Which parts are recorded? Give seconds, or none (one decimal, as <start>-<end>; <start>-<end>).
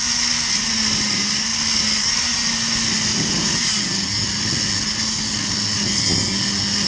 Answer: 0.0-3.1; 3.6-6.9